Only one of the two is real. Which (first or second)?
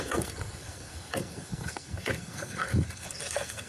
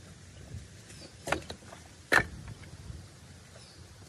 second